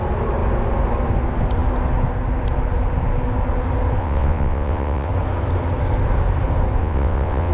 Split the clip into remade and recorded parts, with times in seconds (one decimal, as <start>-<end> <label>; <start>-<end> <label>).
0.0-4.0 recorded; 4.0-5.1 remade; 5.1-6.8 recorded; 6.8-7.5 remade